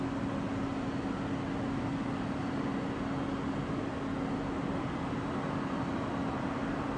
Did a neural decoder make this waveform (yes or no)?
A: no